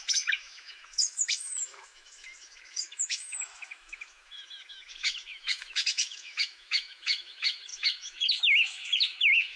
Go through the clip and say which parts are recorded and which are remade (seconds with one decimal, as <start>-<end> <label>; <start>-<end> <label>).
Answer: 0.0-9.6 remade

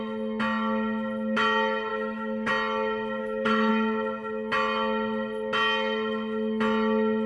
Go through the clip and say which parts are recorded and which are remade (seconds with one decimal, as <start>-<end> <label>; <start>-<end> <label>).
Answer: 0.0-1.9 recorded; 1.9-2.5 remade; 2.5-3.2 recorded; 3.2-3.7 remade; 3.7-7.3 recorded

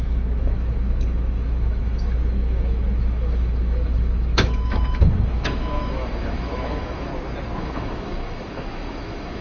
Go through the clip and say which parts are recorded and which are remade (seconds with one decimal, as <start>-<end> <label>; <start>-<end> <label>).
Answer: 0.0-7.1 remade; 7.1-7.6 recorded; 7.6-9.4 remade

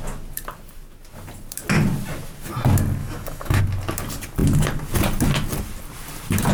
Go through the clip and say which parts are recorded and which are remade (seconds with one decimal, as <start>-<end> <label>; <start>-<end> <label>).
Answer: 0.0-3.0 recorded; 3.0-3.6 remade; 3.6-6.5 recorded

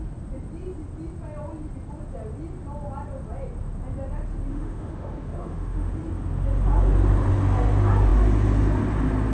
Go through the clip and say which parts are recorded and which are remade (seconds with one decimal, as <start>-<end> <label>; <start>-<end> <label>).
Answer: 0.0-4.5 recorded; 4.5-5.9 remade; 5.9-9.3 recorded

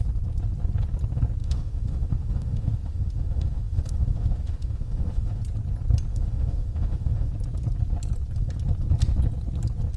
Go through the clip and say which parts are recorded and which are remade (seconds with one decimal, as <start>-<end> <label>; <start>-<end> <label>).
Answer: 0.0-1.4 recorded; 1.4-5.4 remade; 5.4-6.1 recorded; 6.1-7.3 remade; 7.3-10.0 recorded

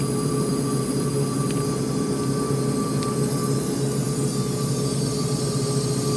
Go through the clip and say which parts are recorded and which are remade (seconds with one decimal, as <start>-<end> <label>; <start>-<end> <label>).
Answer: 0.0-6.2 recorded

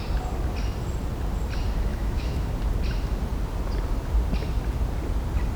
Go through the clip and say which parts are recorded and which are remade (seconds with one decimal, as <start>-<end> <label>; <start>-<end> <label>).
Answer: 0.0-1.9 recorded; 1.9-2.5 remade; 2.5-5.6 recorded